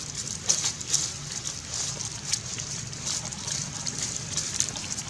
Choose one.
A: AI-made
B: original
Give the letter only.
B